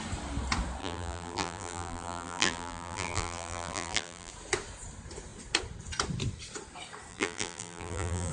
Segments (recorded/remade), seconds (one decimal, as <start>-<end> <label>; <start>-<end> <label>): 0.0-0.8 recorded; 0.8-4.3 remade; 4.3-7.1 recorded; 7.1-8.3 remade